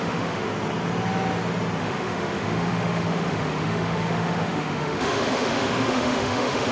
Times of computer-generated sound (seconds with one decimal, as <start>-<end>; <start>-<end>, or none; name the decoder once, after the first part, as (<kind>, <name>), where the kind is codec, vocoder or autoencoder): 0.0-0.5 (autoencoder, DAC-VAE); 1.8-6.7